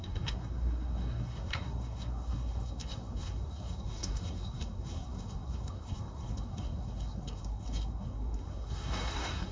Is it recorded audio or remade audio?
remade